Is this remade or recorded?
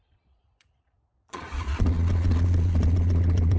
remade